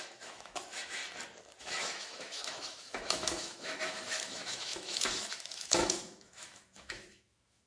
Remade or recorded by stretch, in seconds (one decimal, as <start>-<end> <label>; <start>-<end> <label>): 0.0-1.0 remade; 1.0-1.6 recorded; 1.6-7.7 remade